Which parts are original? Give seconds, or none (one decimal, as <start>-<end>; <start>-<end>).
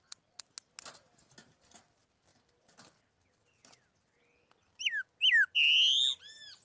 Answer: 0.0-6.6